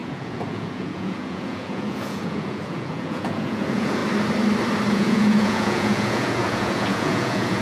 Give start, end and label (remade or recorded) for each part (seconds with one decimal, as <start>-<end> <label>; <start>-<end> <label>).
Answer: 0.0-4.0 remade; 4.0-4.9 recorded; 4.9-7.6 remade